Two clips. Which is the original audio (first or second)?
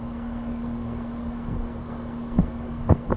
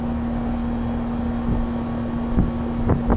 second